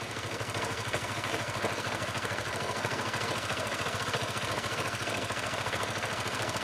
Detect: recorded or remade remade